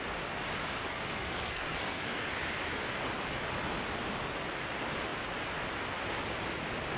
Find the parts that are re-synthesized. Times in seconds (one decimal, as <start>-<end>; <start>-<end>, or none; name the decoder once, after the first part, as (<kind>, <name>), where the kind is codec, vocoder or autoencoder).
0.8-2.3 (codec, SNAC)